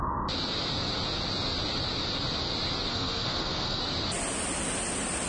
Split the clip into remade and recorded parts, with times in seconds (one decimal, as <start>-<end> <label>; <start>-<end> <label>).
0.0-2.9 recorded; 2.9-3.8 remade; 3.8-5.3 recorded

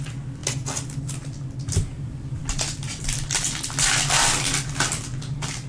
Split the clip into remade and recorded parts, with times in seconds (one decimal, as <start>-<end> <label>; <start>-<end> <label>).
0.0-5.7 recorded